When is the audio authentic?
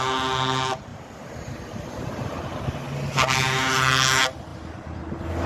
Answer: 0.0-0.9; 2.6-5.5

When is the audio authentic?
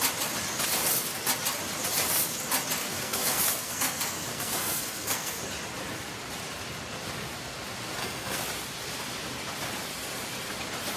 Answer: 0.0-2.8; 5.4-8.0; 8.5-11.0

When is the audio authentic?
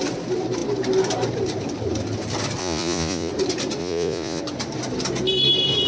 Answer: 0.0-2.6; 3.3-3.8; 4.4-5.9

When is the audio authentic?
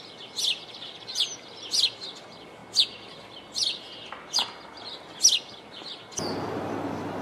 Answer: 0.0-7.2